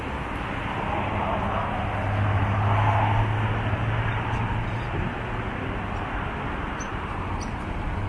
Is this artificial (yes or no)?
no